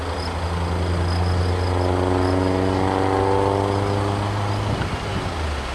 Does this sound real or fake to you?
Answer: real